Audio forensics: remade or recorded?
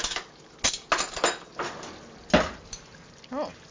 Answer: recorded